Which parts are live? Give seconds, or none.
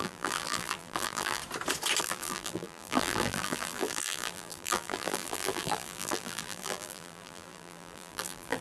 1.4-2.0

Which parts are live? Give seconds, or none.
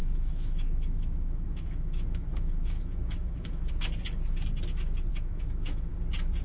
3.7-5.1; 5.9-6.4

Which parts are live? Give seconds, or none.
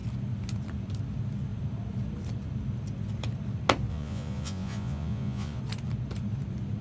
0.0-3.9; 5.6-6.8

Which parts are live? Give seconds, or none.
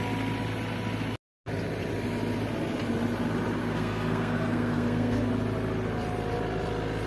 0.0-3.6; 5.3-7.1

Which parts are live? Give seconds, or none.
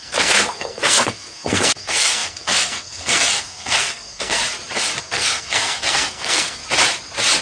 4.4-5.0; 6.6-7.4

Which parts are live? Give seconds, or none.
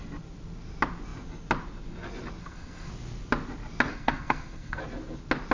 0.0-2.4; 2.9-3.9; 4.8-5.5